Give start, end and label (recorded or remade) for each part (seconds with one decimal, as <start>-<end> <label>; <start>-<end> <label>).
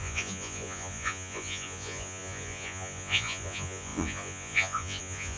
0.0-5.4 remade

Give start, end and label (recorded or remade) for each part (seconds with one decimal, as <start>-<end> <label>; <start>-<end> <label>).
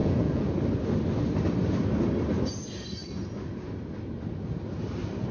0.0-0.6 remade; 0.6-5.3 recorded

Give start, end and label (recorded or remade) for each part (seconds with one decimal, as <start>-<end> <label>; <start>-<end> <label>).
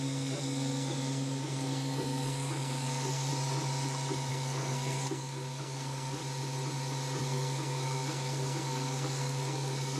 0.0-3.3 remade; 3.3-4.3 recorded; 4.3-6.2 remade; 6.2-7.2 recorded; 7.2-10.0 remade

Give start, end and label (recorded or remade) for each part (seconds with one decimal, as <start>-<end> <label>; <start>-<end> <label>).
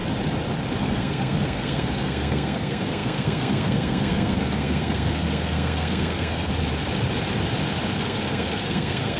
0.0-0.8 recorded; 0.8-6.5 remade; 6.5-8.0 recorded; 8.0-9.2 remade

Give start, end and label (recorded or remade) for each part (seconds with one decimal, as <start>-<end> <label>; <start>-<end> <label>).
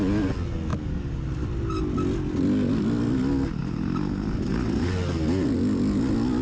0.0-6.4 recorded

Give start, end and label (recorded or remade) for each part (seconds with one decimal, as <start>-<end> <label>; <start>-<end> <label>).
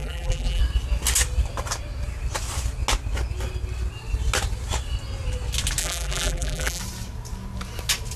0.0-0.6 remade; 0.6-5.8 recorded; 5.8-6.8 remade; 6.8-8.2 recorded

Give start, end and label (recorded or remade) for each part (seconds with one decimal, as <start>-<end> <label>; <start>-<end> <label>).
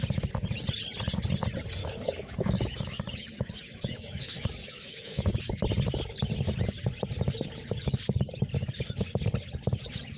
0.0-1.8 recorded; 1.8-5.4 remade; 5.4-10.2 recorded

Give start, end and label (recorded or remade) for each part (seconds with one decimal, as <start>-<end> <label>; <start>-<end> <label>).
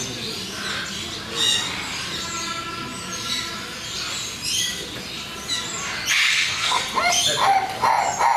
0.0-6.3 recorded; 6.3-6.8 remade; 6.8-8.4 recorded